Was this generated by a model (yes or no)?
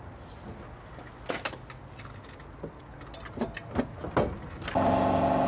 no